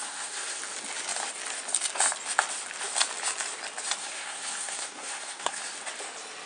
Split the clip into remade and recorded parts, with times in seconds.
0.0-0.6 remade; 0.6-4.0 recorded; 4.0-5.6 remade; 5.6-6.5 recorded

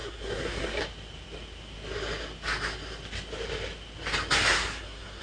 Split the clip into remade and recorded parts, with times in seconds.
0.0-0.8 remade; 0.8-4.5 recorded; 4.5-5.2 remade

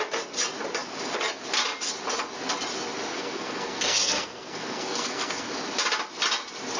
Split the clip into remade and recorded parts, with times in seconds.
0.0-3.1 recorded; 3.1-5.5 remade; 5.5-6.8 recorded